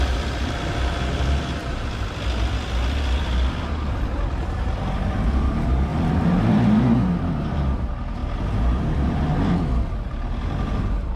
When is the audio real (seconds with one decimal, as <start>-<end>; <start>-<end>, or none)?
0.0-11.2